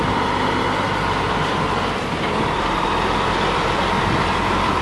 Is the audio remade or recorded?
remade